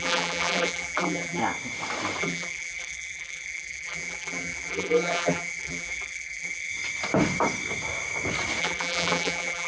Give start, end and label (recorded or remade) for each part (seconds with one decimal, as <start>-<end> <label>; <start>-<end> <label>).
0.0-1.4 remade; 1.4-2.2 recorded; 2.2-6.7 remade; 6.7-8.6 recorded; 8.6-9.7 remade